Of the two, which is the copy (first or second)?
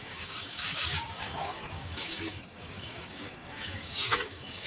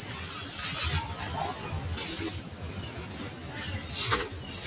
first